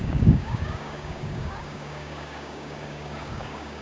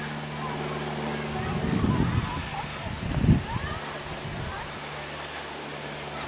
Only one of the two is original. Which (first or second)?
second